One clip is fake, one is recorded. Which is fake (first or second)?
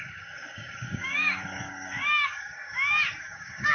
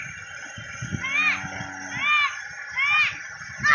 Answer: first